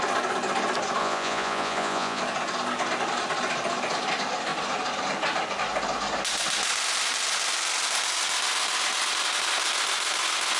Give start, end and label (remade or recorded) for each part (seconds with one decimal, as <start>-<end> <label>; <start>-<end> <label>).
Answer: 0.0-1.0 recorded; 1.0-2.2 remade; 2.2-10.6 recorded